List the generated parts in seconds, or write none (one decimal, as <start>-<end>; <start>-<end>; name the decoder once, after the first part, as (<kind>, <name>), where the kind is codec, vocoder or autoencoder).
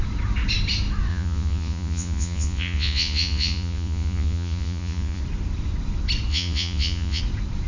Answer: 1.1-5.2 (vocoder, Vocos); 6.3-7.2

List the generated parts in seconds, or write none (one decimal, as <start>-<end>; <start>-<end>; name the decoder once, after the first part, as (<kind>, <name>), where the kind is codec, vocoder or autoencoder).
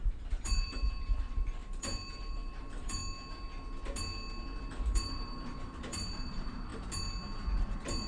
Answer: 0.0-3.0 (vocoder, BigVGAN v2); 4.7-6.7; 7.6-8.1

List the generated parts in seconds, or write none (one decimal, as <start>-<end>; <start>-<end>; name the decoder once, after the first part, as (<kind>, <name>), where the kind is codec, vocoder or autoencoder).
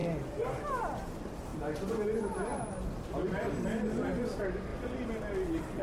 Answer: none